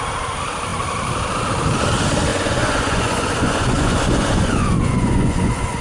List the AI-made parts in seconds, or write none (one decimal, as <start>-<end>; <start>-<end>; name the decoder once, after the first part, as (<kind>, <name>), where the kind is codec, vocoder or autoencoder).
2.3-5.8 (vocoder, Vocos)